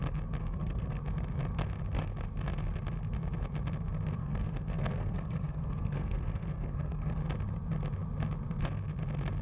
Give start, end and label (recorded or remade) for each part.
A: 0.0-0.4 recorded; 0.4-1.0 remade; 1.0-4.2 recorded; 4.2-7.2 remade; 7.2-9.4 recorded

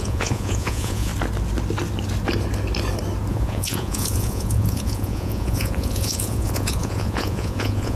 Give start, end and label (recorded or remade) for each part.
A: 0.0-1.1 remade; 1.1-3.3 recorded; 3.3-8.0 remade

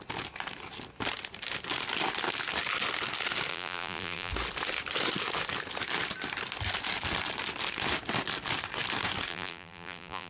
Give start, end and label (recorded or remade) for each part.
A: 0.0-3.5 recorded; 3.5-4.3 remade; 4.3-9.3 recorded; 9.3-10.3 remade

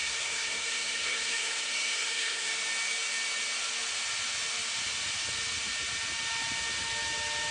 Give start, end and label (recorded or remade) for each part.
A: 0.0-2.5 remade; 2.5-7.5 recorded

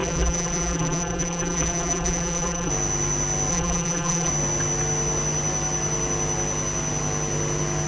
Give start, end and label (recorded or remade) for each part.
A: 0.0-2.7 remade; 2.7-3.5 recorded; 3.5-4.3 remade; 4.3-7.9 recorded

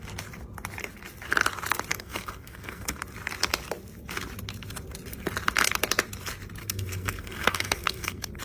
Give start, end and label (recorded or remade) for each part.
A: 0.0-1.9 recorded; 1.9-3.0 remade; 3.0-6.6 recorded; 6.6-8.4 remade

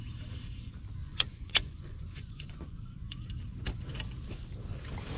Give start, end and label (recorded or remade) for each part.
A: 0.0-1.0 recorded; 1.0-3.3 remade; 3.3-5.2 recorded